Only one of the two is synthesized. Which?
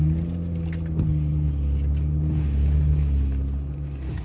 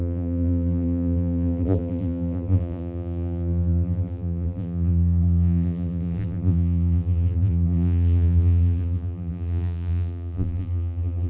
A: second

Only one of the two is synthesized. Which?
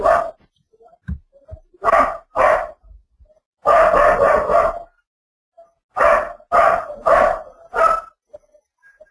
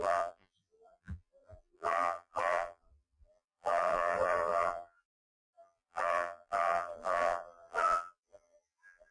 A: second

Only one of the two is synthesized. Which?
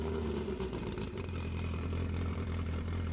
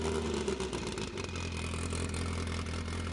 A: first